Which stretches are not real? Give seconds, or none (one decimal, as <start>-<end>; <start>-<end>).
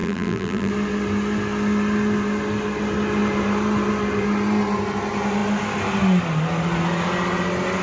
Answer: 0.0-0.7